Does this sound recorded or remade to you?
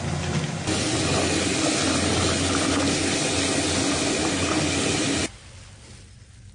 recorded